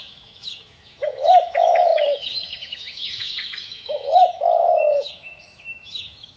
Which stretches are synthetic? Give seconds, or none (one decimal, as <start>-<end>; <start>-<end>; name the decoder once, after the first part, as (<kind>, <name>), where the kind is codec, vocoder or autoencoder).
0.0-6.4 (autoencoder, DAC-VAE)

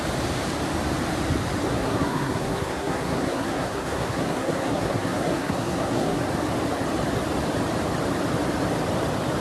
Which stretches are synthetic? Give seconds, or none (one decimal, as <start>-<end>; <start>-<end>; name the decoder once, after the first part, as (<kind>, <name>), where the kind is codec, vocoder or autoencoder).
1.7-6.2 (codec, SNAC)